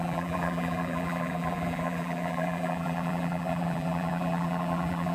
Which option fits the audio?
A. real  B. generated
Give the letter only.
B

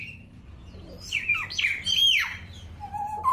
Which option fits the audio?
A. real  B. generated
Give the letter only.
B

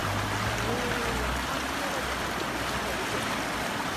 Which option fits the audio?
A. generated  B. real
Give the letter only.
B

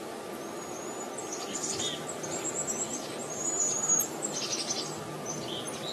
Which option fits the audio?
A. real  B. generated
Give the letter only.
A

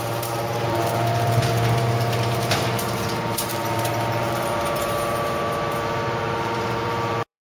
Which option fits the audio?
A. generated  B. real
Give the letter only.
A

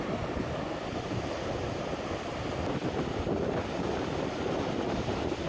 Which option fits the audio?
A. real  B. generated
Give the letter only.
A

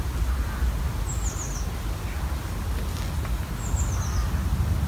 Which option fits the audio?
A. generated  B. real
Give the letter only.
B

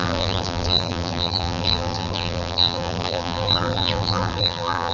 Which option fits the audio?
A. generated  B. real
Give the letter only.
A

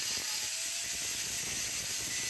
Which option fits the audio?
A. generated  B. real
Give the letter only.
B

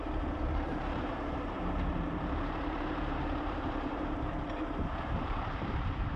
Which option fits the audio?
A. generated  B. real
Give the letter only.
A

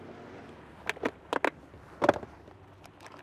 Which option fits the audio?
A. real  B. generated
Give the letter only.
A